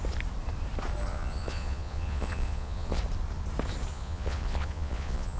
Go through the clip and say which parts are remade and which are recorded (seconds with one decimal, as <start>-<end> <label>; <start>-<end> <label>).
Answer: 0.0-1.1 recorded; 1.1-3.0 remade; 3.0-3.9 recorded; 3.9-5.4 remade